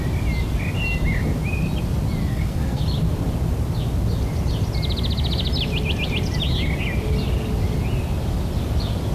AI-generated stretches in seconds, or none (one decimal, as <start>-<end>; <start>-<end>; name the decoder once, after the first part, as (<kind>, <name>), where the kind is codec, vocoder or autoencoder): 2.2-2.8 (codec, SNAC)